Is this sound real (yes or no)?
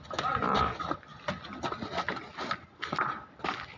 yes